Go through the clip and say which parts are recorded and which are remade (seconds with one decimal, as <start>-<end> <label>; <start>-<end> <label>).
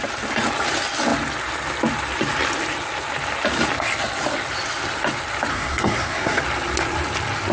0.0-5.5 recorded; 5.5-6.4 remade; 6.4-7.5 recorded